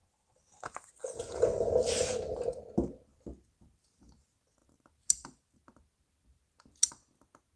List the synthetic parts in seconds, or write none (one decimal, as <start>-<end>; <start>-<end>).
none